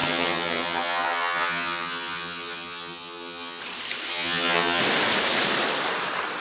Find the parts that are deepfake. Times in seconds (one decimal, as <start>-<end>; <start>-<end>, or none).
0.0-3.6; 4.1-4.8

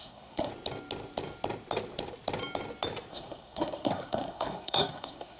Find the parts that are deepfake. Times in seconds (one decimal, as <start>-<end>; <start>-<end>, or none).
0.0-0.5; 3.1-5.4

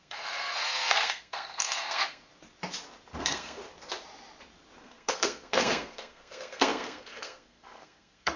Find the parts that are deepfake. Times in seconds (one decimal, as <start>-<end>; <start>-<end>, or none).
0.0-2.3; 3.2-3.6; 4.8-8.4

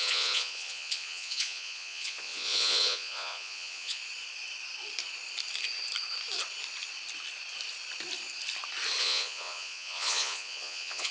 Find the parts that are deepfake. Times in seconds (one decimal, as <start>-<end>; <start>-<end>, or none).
0.0-4.0; 9.0-11.1

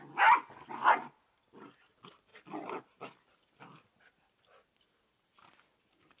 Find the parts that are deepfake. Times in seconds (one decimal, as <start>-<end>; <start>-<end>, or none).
none

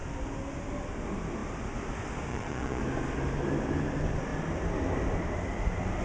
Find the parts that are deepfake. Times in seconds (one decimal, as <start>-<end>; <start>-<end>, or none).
2.3-2.8

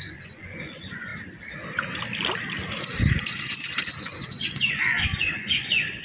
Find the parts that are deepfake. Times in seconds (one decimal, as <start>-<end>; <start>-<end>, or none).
0.0-1.1; 4.0-6.0